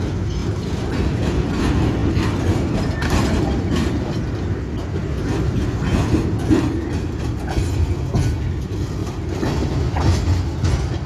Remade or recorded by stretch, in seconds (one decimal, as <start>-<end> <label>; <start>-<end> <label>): 0.0-0.4 recorded; 0.4-1.6 remade; 1.6-2.0 recorded; 2.0-4.1 remade; 4.1-9.0 recorded; 9.0-9.7 remade; 9.7-11.1 recorded